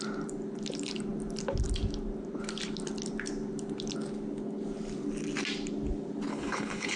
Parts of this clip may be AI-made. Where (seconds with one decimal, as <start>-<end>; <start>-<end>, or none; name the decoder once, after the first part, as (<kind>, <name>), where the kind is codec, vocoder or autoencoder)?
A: 6.3-7.0 (codec, HILCodec)